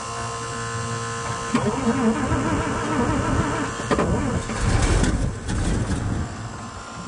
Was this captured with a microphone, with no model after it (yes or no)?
yes